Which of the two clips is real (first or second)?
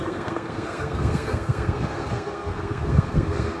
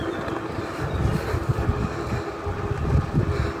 second